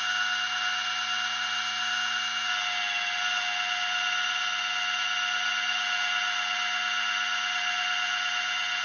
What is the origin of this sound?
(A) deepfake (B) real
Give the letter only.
B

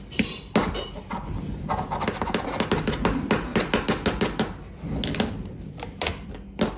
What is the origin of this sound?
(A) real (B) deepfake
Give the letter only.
A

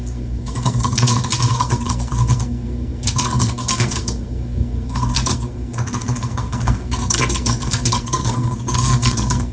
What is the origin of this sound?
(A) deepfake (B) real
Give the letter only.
A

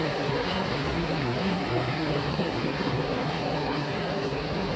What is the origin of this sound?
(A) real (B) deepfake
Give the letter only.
B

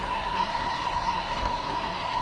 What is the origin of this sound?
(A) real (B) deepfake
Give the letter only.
B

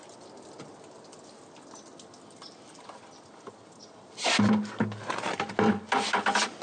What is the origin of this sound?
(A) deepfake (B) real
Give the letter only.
B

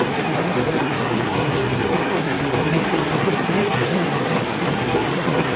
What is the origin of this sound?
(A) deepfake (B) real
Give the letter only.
A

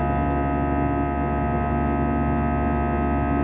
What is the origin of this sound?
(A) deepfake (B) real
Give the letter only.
B